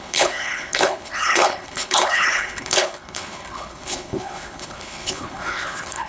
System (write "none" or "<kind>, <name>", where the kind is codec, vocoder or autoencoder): codec, HILCodec